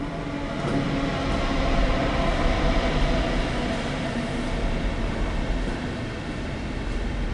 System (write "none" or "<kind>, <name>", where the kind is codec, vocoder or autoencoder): none